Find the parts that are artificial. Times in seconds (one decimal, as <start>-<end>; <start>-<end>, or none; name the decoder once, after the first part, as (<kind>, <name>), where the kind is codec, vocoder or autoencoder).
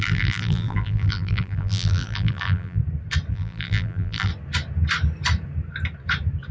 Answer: 0.0-2.8 (vocoder, BigVGAN v2); 3.3-4.3